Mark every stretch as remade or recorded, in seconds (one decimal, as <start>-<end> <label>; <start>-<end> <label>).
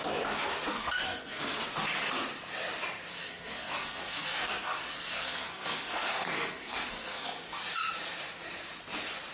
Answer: 0.0-0.7 recorded; 0.7-1.6 remade; 1.6-3.1 recorded; 3.1-7.6 remade; 7.6-9.3 recorded